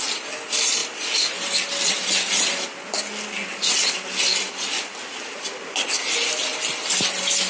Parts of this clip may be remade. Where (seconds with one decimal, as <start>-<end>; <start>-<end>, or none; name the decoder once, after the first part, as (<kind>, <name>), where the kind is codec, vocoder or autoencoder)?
0.8-2.1 (vocoder, BigVGAN v2)